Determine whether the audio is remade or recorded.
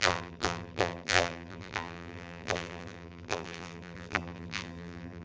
remade